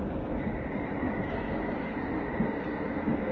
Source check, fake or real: real